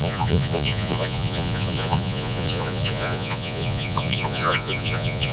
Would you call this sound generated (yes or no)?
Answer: yes